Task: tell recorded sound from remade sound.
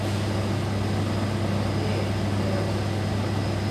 recorded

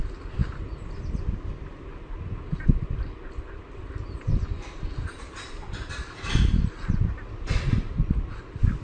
recorded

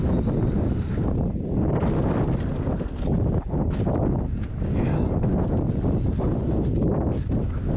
recorded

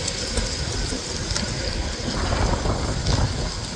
recorded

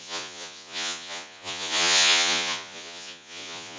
remade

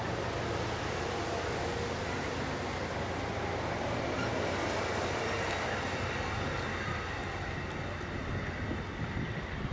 recorded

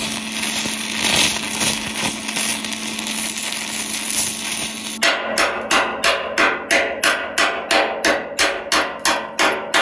recorded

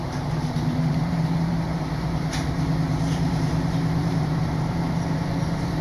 remade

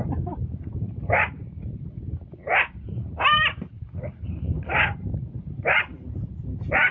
remade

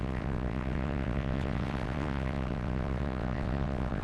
remade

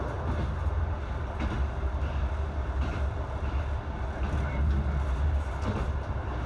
recorded